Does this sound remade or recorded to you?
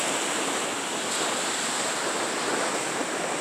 recorded